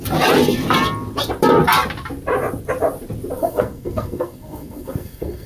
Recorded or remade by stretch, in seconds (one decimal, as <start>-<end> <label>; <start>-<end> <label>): 0.0-3.4 recorded; 3.4-5.5 remade